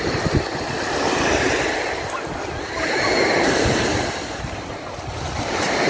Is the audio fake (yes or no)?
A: no